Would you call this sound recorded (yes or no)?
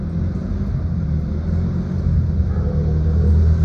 yes